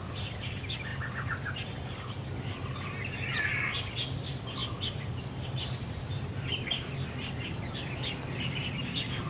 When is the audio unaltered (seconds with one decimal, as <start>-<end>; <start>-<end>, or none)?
0.0-0.9; 2.3-4.6; 6.8-9.3